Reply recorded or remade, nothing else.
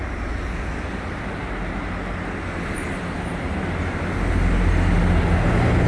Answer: recorded